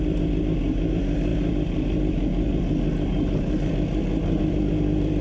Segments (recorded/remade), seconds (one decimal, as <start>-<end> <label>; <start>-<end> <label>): 0.0-5.2 recorded